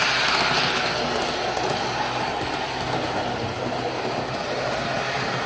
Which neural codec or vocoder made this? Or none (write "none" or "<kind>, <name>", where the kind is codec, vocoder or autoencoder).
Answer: none